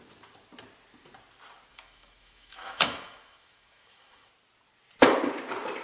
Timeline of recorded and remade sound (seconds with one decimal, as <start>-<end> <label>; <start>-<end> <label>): 0.0-1.7 recorded; 1.7-4.3 remade; 4.3-5.8 recorded